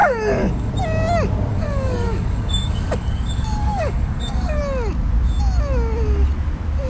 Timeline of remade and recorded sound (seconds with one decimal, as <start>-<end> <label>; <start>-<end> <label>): 0.0-0.7 remade; 0.7-1.5 recorded; 1.5-4.6 remade; 4.6-6.9 recorded